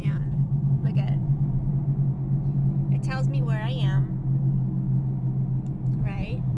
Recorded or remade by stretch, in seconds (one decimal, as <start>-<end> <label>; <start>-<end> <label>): 0.0-1.7 remade; 1.7-5.7 recorded; 5.7-6.6 remade